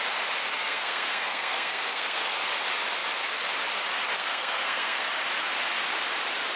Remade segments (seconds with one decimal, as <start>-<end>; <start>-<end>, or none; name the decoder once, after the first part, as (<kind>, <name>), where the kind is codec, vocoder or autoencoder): 0.5-2.5 (codec, SNAC); 4.2-5.1